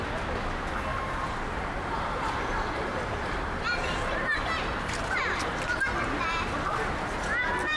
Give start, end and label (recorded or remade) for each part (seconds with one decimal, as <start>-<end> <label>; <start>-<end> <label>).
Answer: 0.0-0.9 recorded; 0.9-5.6 remade; 5.6-7.8 recorded